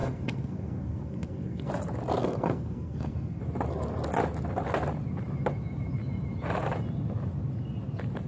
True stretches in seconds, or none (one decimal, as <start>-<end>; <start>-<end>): 1.7-2.2; 3.4-8.3